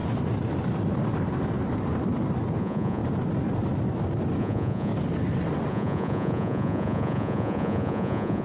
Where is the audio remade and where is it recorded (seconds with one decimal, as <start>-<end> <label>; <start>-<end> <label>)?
0.0-2.6 recorded; 2.6-3.0 remade; 3.0-4.4 recorded; 4.4-4.9 remade; 4.9-5.7 recorded; 5.7-8.4 remade